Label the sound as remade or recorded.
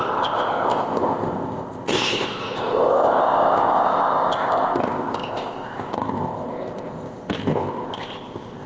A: remade